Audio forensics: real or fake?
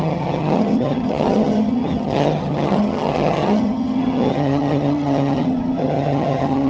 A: fake